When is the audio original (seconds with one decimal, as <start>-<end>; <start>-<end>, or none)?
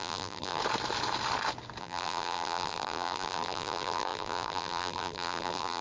0.6-1.8